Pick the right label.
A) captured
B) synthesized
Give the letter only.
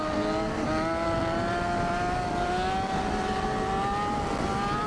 A